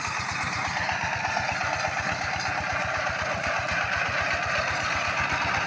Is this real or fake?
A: real